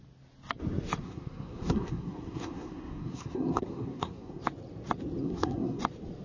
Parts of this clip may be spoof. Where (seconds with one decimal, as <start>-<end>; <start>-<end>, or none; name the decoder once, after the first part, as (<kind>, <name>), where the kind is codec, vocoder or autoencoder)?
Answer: 1.0-4.4 (codec, SNAC); 5.2-5.8